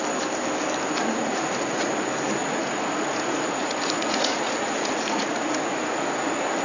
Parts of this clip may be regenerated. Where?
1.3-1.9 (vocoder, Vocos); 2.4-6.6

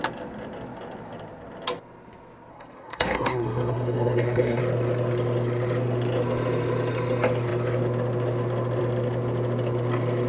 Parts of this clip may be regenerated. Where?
2.5-4.6 (codec, SNAC)